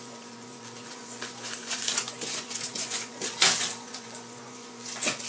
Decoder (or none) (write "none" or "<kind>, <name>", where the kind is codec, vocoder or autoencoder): vocoder, Vocos